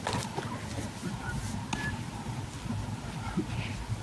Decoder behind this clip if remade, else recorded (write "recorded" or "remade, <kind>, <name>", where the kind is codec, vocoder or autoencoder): recorded